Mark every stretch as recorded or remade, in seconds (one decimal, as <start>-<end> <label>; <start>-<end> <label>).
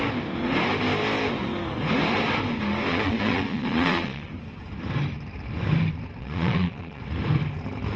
0.0-2.9 recorded; 2.9-4.3 remade; 4.3-6.2 recorded; 6.2-7.0 remade; 7.0-8.0 recorded